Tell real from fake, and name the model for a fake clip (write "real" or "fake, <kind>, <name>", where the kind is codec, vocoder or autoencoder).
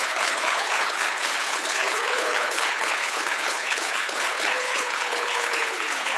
fake, codec, HILCodec